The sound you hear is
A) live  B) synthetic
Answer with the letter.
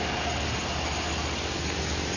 A